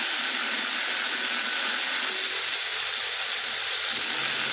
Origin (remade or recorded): recorded